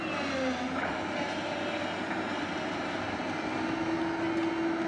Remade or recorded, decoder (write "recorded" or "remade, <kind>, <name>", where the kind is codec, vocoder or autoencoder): recorded